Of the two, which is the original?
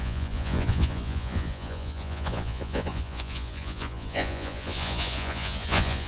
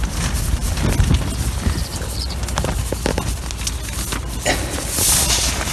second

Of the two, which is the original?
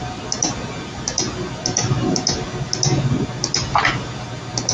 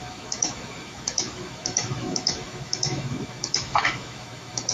first